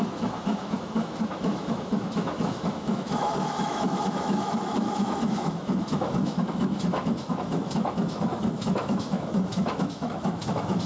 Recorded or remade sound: remade